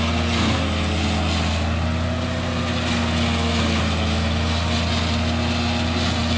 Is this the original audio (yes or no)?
yes